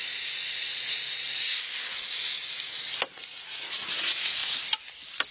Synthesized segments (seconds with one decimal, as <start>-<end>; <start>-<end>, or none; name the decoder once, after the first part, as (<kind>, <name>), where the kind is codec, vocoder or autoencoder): 3.1-4.4 (vocoder, Vocos)